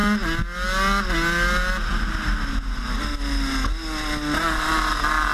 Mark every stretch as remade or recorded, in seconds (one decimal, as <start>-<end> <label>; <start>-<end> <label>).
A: 0.0-5.3 recorded